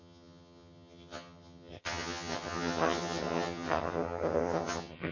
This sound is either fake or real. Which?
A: fake